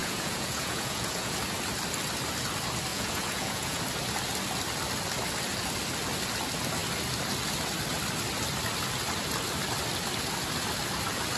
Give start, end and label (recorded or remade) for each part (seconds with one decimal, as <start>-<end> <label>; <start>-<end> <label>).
0.0-1.4 remade; 1.4-2.9 recorded; 2.9-3.8 remade; 3.8-11.4 recorded

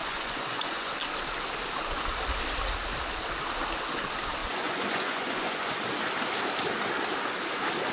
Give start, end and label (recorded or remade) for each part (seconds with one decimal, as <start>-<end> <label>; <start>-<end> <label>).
0.0-0.9 remade; 0.9-4.4 recorded; 4.4-5.8 remade; 5.8-7.9 recorded

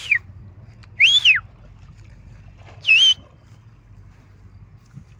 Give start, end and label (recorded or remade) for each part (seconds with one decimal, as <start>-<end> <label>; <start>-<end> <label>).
0.0-5.2 recorded

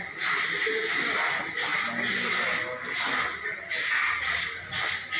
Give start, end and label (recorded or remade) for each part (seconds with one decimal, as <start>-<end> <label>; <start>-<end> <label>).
0.0-5.2 recorded